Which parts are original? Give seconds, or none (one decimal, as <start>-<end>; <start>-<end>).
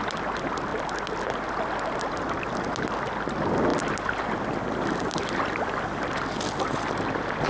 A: 0.0-7.5